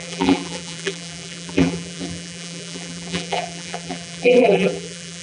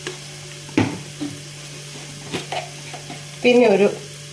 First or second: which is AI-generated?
first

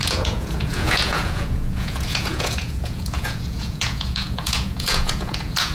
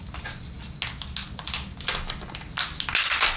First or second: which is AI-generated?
first